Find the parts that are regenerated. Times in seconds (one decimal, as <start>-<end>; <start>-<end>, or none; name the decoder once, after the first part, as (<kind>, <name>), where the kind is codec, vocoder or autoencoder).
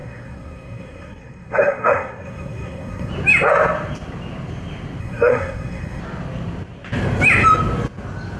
0.0-3.1 (codec, SNAC); 5.0-6.0